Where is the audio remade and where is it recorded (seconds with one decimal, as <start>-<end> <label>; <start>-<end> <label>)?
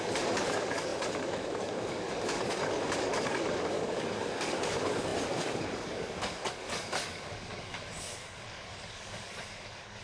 0.0-10.0 remade